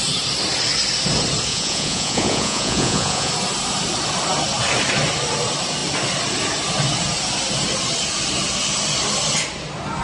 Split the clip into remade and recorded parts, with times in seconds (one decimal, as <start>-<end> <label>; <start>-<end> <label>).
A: 0.0-1.5 recorded; 1.5-3.3 remade; 3.3-10.0 recorded